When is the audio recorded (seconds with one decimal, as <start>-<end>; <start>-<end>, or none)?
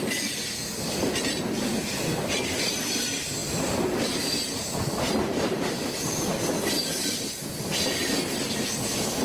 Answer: 0.0-9.2